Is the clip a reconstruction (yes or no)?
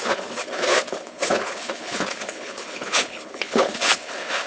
yes